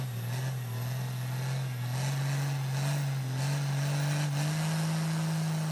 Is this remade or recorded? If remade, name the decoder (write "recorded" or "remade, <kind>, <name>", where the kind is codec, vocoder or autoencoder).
recorded